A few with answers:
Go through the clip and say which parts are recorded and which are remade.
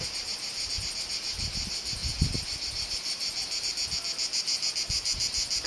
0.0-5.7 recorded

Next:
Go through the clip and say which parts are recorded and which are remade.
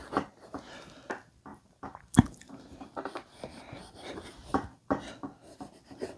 0.0-1.5 recorded; 1.5-5.1 remade; 5.1-6.2 recorded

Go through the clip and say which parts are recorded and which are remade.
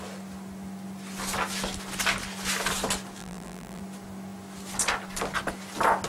0.0-3.2 recorded; 3.2-3.8 remade; 3.8-6.1 recorded